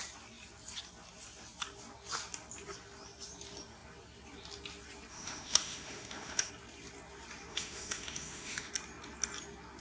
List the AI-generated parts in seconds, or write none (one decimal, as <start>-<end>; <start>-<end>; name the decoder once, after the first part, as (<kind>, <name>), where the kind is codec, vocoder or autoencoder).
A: 5.1-6.5 (autoencoder, DAC-VAE); 7.5-8.7